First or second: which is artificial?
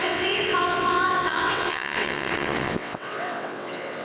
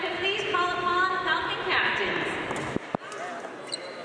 first